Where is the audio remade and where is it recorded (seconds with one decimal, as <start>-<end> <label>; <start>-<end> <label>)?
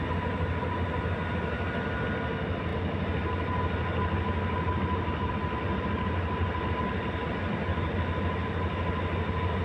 0.0-9.6 recorded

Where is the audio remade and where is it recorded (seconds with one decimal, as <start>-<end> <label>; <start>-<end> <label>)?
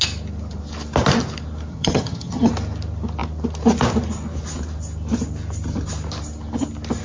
0.0-1.7 recorded; 1.7-2.5 remade; 2.5-7.0 recorded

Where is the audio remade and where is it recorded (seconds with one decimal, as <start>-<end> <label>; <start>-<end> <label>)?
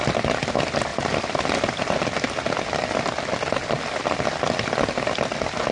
0.0-0.9 recorded; 0.9-1.9 remade; 1.9-5.7 recorded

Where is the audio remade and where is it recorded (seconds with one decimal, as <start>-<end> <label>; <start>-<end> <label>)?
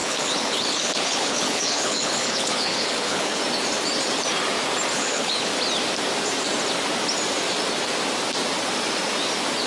0.0-3.4 remade; 3.4-4.9 recorded; 4.9-5.5 remade; 5.5-9.7 recorded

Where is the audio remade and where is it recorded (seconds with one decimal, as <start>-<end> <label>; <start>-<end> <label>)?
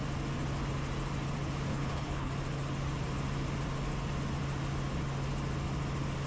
0.0-1.7 recorded; 1.7-2.3 remade; 2.3-6.3 recorded